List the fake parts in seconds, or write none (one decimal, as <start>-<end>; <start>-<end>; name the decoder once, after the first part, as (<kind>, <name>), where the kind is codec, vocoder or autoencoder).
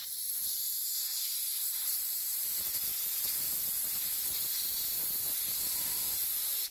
1.5-4.5 (vocoder, BigVGAN v2)